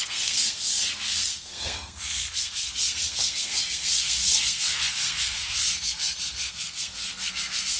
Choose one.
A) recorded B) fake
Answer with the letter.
B